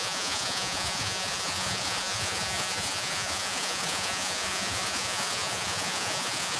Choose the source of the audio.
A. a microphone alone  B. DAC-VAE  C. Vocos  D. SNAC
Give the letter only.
C